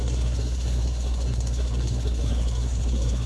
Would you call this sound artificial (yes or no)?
yes